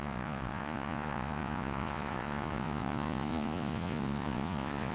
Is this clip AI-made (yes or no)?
yes